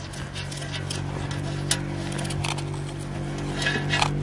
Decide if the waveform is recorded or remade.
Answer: recorded